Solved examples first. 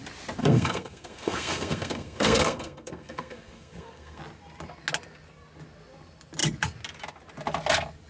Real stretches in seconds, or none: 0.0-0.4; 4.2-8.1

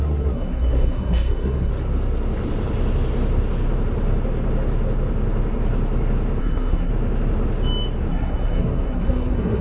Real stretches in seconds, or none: 1.7-6.4; 6.9-8.1

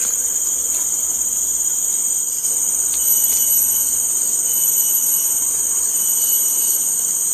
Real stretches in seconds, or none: 1.5-3.0

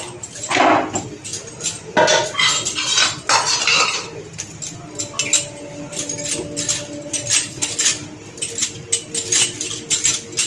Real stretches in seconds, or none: 0.0-10.5

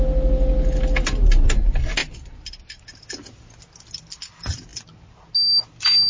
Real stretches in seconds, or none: 0.0-6.1